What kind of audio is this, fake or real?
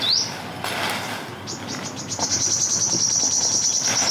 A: real